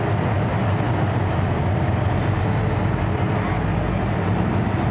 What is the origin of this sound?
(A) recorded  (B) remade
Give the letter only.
A